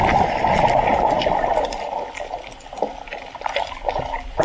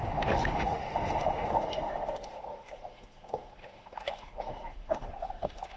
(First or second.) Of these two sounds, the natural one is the first